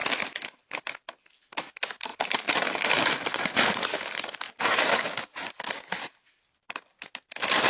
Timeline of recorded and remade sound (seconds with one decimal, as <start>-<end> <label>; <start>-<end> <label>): 0.0-2.1 recorded; 2.1-5.5 remade; 5.5-7.7 recorded